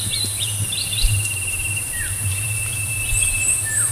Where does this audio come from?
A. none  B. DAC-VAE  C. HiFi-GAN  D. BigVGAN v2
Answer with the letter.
D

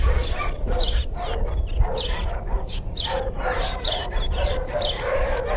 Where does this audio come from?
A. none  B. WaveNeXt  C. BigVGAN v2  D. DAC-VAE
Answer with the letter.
A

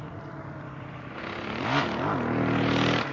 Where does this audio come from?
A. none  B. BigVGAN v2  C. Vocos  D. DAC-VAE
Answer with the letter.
A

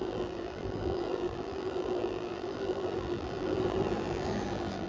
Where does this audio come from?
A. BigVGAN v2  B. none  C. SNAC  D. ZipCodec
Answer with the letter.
A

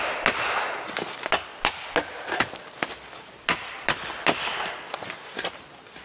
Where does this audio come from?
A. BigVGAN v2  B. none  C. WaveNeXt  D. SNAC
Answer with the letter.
B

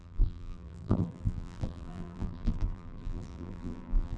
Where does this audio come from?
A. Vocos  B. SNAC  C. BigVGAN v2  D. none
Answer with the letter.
C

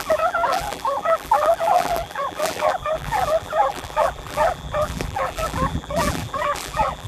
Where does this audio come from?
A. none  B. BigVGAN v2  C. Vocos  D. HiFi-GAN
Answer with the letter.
B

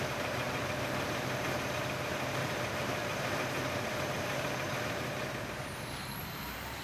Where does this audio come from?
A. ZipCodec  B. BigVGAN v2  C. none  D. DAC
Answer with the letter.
B